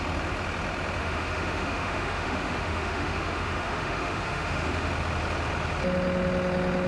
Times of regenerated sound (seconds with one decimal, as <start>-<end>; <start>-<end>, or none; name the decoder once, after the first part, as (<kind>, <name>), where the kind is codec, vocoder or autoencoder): 1.0-4.9 (autoencoder, DAC-VAE)